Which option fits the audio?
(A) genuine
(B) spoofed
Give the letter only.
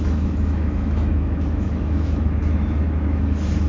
B